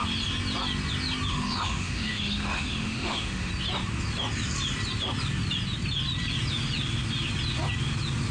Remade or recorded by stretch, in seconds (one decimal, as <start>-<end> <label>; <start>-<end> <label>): 0.0-1.3 recorded; 1.3-3.5 remade; 3.5-8.3 recorded